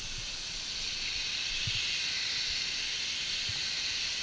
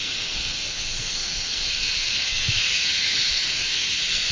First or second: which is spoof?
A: second